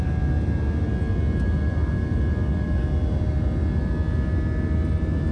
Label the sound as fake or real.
real